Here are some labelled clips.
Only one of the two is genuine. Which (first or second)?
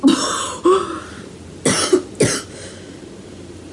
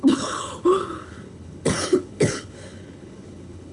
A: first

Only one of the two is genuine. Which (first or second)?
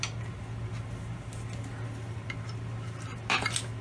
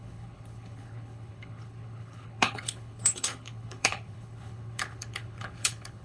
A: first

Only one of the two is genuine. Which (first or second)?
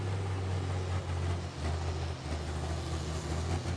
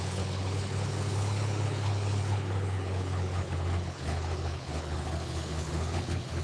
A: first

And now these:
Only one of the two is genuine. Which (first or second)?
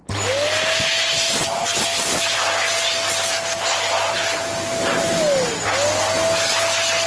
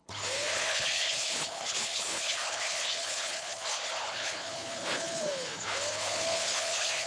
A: first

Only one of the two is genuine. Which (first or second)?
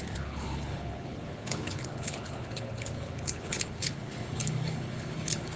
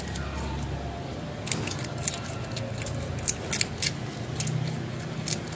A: second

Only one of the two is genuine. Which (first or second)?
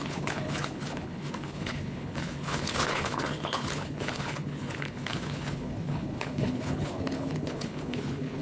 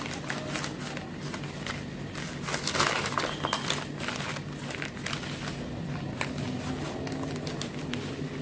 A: second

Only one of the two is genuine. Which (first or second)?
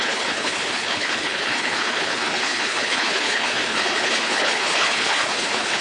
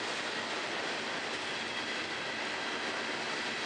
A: second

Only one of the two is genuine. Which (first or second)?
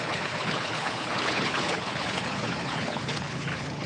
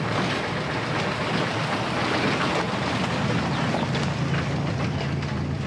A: second